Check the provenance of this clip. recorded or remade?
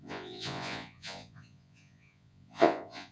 remade